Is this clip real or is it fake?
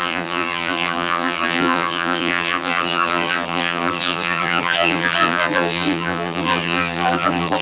fake